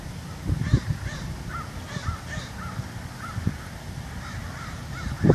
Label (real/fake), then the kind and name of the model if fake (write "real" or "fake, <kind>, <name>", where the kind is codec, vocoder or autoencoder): real